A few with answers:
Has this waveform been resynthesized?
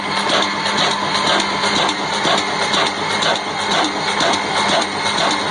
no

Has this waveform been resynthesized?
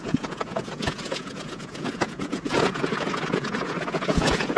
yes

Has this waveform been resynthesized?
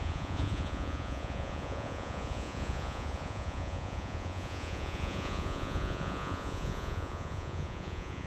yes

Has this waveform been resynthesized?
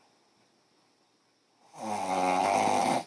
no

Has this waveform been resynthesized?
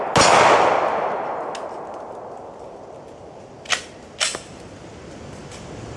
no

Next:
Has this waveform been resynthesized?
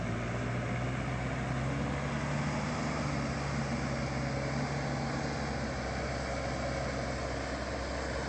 no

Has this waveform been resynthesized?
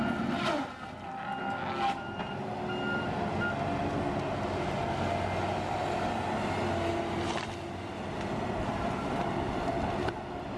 no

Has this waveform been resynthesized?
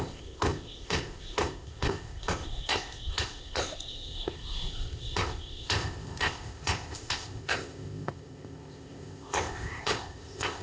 yes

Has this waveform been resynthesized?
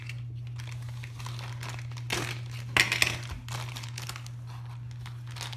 no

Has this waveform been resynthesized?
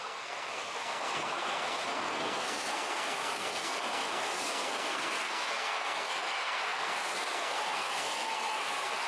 yes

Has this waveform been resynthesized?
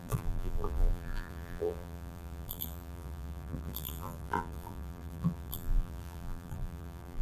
yes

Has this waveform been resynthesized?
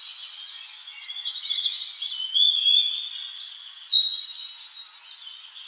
yes